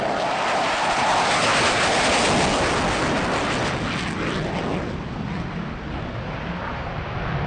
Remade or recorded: recorded